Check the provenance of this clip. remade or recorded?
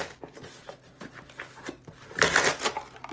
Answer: recorded